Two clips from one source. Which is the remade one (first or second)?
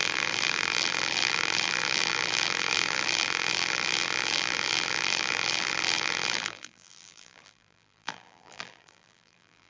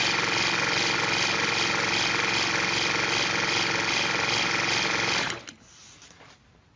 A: first